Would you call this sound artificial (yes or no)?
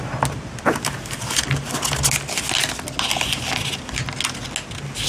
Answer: no